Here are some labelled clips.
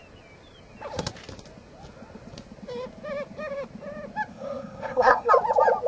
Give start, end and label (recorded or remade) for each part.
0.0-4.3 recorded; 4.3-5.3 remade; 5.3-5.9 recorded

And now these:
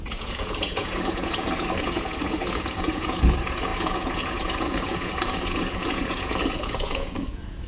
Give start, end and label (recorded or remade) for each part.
0.0-7.7 remade

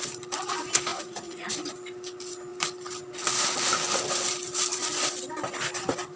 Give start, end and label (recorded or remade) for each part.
0.0-0.9 recorded; 0.9-1.5 remade; 1.5-6.2 recorded

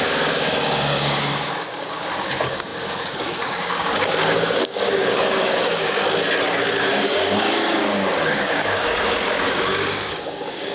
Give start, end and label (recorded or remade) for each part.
0.0-6.0 remade; 6.0-6.8 recorded; 6.8-10.7 remade

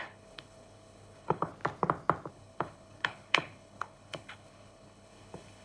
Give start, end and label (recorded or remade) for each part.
0.0-1.5 remade; 1.5-2.3 recorded; 2.3-5.6 remade

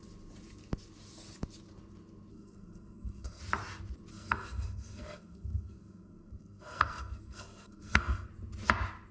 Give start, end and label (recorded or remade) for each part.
0.0-2.3 recorded; 2.3-3.4 remade; 3.4-4.1 recorded; 4.1-8.3 remade; 8.3-9.1 recorded

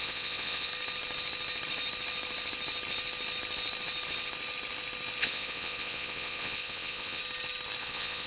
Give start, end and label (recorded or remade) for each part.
0.0-0.7 remade; 0.7-5.2 recorded; 5.2-7.2 remade; 7.2-7.8 recorded; 7.8-8.3 remade